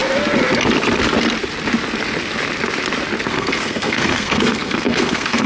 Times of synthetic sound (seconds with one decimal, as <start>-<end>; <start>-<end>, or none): 3.3-5.5